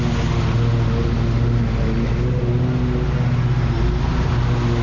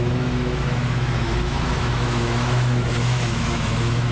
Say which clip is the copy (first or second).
second